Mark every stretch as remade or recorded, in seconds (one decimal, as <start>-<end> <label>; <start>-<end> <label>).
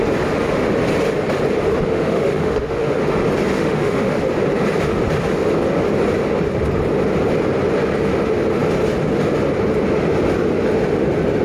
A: 0.0-1.9 recorded; 1.9-3.0 remade; 3.0-3.5 recorded; 3.5-4.2 remade; 4.2-11.4 recorded